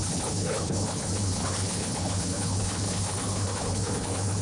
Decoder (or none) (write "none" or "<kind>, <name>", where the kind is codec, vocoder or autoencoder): codec, HILCodec